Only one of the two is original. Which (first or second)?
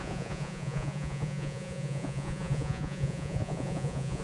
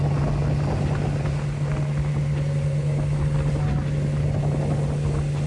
second